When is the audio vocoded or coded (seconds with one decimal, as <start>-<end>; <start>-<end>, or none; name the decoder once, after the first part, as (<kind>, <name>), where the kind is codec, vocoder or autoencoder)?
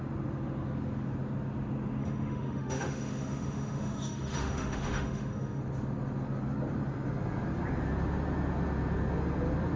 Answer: 2.0-5.6 (autoencoder, DAC-VAE)